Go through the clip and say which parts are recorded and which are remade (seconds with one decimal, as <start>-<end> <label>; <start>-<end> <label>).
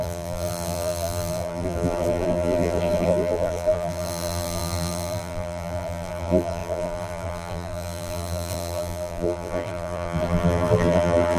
0.0-11.4 remade